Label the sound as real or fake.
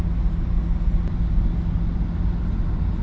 real